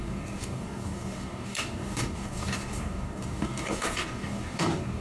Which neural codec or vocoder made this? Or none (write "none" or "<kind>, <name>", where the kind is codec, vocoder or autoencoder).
codec, DAC